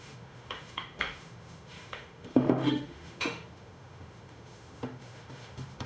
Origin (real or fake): fake